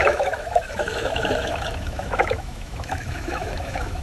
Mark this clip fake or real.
fake